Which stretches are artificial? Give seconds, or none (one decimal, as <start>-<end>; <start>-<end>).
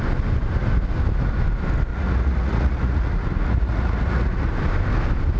1.9-4.5